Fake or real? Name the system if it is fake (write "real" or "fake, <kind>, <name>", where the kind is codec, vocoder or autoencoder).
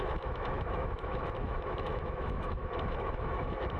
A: fake, autoencoder, DAC-VAE